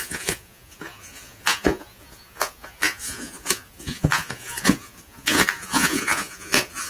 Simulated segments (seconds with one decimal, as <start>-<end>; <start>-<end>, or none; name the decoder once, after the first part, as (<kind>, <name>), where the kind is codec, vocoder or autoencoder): 0.0-6.9 (vocoder, Vocos)

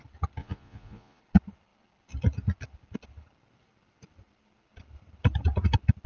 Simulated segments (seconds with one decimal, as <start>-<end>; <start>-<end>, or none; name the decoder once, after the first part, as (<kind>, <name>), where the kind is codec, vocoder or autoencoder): 0.4-1.2 (vocoder, Vocos)

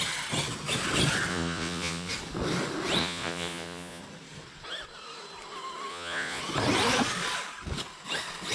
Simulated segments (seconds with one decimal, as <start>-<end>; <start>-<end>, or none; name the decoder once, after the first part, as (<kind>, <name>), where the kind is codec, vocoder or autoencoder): 1.3-2.1 (vocoder, Vocos); 3.0-4.0; 5.9-6.4

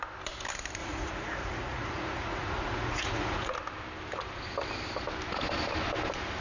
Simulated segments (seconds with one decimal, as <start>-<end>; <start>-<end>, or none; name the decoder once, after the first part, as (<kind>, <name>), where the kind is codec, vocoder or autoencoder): 0.8-3.5 (vocoder, Vocos)

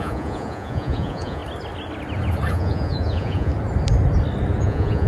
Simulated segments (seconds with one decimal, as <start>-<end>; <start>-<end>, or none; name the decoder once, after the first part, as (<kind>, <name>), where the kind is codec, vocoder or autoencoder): 0.0-1.4 (vocoder, Vocos); 2.5-3.5; 4.6-5.1

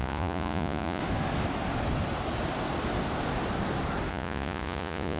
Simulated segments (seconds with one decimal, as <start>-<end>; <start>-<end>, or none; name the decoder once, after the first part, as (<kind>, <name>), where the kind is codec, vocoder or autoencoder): 0.0-1.0 (vocoder, Vocos); 4.1-5.2

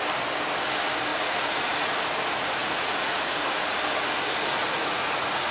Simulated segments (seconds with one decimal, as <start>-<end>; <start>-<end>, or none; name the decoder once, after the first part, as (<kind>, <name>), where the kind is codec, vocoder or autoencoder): 1.1-1.9 (vocoder, Vocos); 2.6-3.8; 4.6-5.5

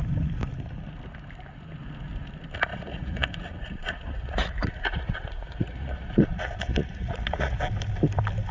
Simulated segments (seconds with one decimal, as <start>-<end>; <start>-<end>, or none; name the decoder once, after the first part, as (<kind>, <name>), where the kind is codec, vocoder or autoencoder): 2.7-7.6 (vocoder, Vocos)